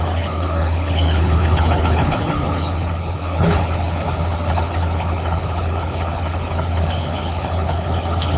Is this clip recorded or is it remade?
remade